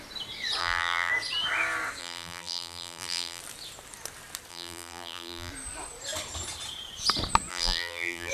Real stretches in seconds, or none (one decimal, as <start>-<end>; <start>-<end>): 0.0-0.6; 1.1-2.0; 3.4-4.5; 5.5-7.5